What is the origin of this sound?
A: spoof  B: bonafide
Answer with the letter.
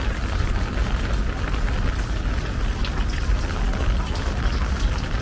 B